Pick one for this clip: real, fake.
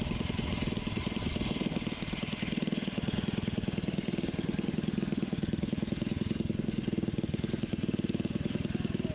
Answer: real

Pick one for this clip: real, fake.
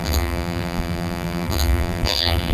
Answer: fake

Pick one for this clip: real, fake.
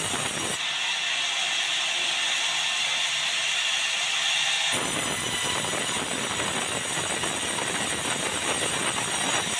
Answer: real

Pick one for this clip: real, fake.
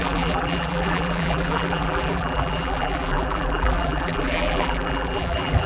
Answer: fake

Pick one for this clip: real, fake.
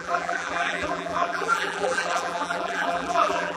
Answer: fake